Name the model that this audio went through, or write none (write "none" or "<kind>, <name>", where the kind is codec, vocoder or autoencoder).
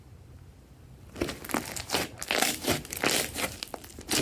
none